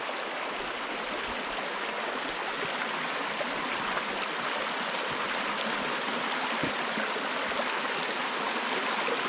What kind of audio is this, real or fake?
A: real